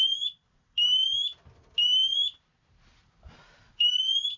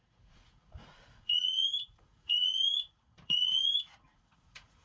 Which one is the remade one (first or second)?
second